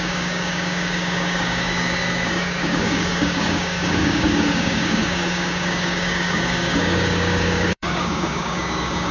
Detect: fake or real fake